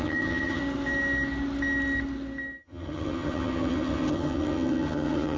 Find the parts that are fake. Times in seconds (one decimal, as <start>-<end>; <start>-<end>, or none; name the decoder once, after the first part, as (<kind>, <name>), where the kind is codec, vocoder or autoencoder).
0.0-0.6 (vocoder, HiFi-GAN); 2.6-5.4